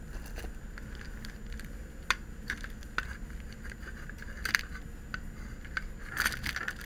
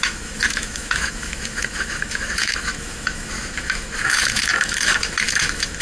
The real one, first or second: first